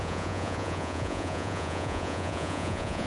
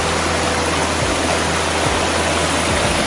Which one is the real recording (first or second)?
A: second